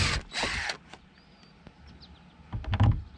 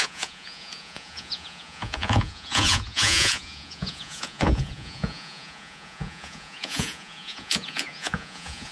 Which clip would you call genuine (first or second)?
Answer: first